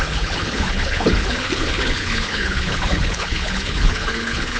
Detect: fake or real fake